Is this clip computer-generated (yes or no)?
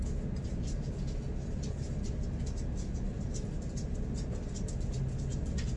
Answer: no